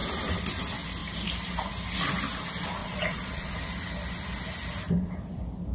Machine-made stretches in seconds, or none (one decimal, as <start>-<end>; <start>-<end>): 2.8-3.5